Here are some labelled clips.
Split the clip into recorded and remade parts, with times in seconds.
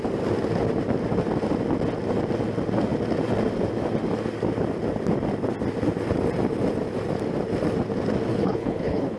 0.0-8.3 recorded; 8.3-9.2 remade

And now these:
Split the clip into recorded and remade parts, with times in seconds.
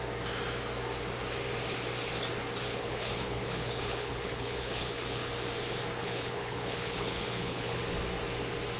0.0-2.7 recorded; 2.7-5.3 remade; 5.3-6.0 recorded; 6.0-7.8 remade; 7.8-8.8 recorded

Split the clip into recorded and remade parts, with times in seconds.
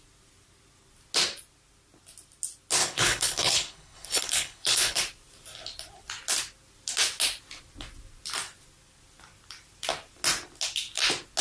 0.0-2.8 recorded; 2.8-5.0 remade; 5.0-11.4 recorded